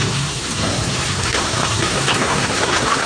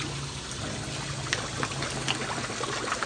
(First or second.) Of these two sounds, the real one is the second